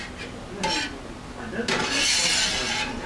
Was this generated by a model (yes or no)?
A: no